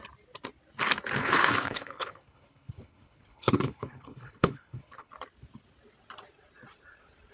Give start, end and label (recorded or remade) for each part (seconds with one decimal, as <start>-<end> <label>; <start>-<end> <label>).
0.0-1.2 recorded; 1.2-5.1 remade; 5.1-7.3 recorded

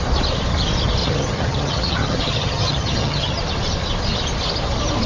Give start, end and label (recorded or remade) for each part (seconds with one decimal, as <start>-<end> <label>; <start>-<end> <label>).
0.0-1.0 recorded; 1.0-3.4 remade; 3.4-5.1 recorded

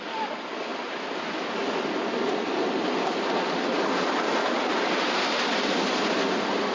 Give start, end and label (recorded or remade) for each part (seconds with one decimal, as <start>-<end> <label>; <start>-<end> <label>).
0.0-6.7 recorded

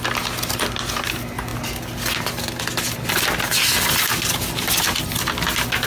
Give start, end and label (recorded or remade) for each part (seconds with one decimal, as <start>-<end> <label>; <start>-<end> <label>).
0.0-5.9 recorded

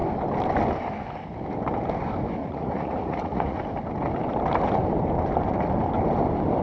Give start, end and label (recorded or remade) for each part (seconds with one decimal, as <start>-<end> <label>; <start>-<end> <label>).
0.0-2.4 recorded; 2.4-3.6 remade; 3.6-6.6 recorded

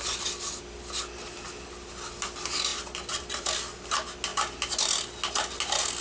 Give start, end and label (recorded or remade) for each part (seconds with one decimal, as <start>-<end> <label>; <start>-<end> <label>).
0.0-6.0 recorded